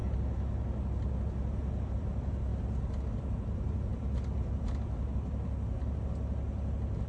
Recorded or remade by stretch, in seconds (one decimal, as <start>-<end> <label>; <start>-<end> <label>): 0.0-1.8 recorded; 1.8-2.5 remade; 2.5-3.1 recorded; 3.1-3.9 remade; 3.9-7.1 recorded